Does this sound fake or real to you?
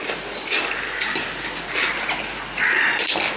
real